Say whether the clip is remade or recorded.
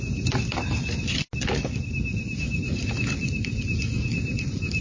recorded